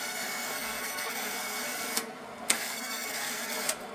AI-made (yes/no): yes